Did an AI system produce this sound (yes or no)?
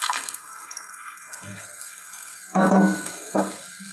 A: yes